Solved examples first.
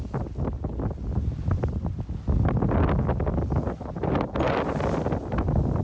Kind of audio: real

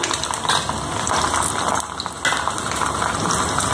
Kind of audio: real